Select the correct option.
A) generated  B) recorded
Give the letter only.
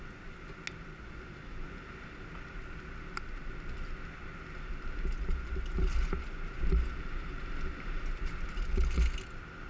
B